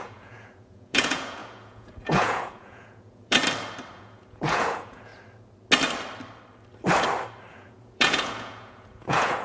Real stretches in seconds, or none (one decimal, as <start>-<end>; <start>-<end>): 3.4-3.9; 5.1-7.5